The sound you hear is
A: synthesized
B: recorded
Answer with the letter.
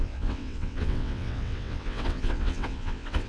A